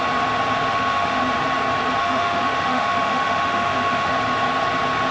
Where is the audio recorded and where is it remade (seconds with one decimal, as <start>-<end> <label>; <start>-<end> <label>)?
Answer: 0.0-0.7 recorded; 0.7-1.2 remade; 1.2-2.0 recorded; 2.0-4.1 remade; 4.1-5.1 recorded